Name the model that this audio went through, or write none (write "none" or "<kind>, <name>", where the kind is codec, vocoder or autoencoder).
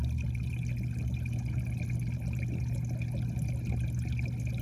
none